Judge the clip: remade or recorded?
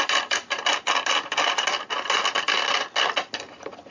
recorded